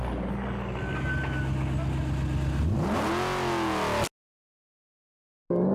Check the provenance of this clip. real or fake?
real